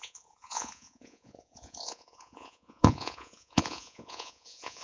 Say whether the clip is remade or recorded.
remade